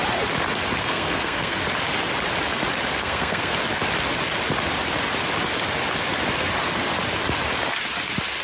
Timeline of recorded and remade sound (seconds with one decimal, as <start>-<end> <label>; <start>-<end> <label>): 0.0-0.8 recorded; 0.8-1.6 remade; 1.6-2.9 recorded; 2.9-3.5 remade; 3.5-8.4 recorded